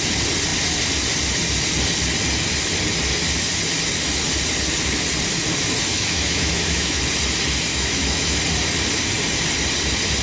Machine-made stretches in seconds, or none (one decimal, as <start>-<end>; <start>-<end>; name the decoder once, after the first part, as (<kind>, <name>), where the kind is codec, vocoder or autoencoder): 5.9-7.0 (autoencoder, DAC-VAE); 7.7-8.4